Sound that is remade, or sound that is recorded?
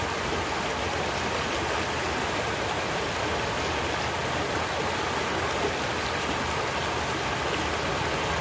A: recorded